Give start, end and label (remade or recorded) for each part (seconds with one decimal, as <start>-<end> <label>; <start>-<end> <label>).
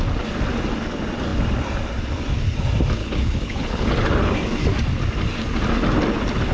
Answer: 0.0-3.0 recorded; 3.0-3.9 remade; 3.9-6.5 recorded